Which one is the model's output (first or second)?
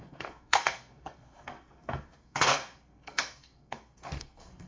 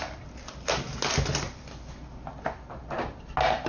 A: first